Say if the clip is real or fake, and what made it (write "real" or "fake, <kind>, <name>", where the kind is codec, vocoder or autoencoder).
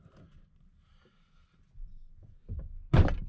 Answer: real